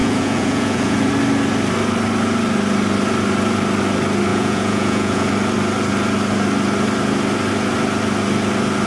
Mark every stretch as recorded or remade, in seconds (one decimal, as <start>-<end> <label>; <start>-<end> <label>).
0.0-1.1 remade; 1.1-4.3 recorded; 4.3-5.3 remade; 5.3-8.9 recorded